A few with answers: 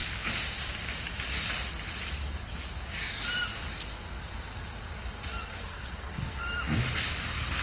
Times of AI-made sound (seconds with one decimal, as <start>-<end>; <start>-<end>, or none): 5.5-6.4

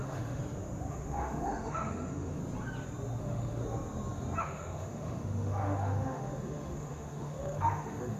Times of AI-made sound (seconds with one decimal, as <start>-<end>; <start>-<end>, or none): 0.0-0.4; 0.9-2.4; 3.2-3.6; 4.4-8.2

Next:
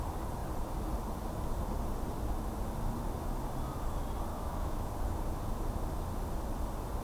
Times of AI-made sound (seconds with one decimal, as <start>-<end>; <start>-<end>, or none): 4.3-4.9

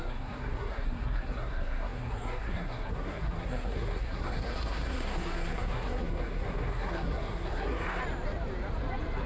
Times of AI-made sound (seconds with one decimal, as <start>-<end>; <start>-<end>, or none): 0.0-8.0

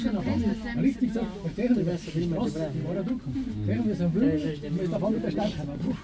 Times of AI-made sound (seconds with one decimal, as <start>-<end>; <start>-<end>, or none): none